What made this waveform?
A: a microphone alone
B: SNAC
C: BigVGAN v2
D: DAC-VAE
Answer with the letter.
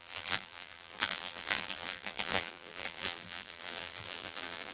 C